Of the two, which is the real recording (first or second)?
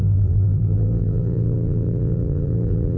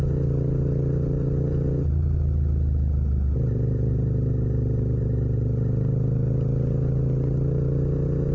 second